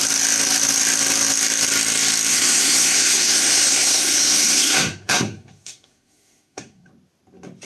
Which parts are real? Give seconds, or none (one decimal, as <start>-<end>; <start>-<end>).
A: 0.0-2.3; 6.9-7.6

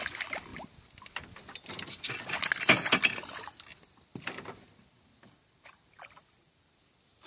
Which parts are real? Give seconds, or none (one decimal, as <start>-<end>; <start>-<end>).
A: 0.5-4.8

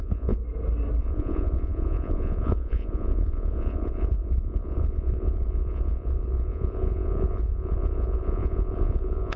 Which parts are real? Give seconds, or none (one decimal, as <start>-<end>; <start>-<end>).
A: 0.4-1.0

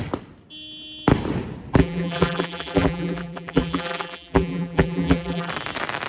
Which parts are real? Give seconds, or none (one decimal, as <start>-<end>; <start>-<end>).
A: 0.0-1.8; 5.5-6.1

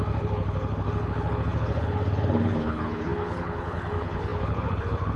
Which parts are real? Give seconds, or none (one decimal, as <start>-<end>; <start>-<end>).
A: none